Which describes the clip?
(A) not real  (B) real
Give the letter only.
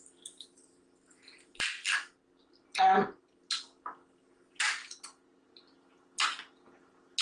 B